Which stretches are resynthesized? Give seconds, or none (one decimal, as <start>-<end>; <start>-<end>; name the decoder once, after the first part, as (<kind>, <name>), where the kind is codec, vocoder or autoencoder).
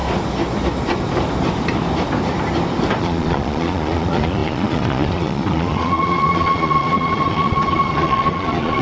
3.0-8.8 (vocoder, Vocos)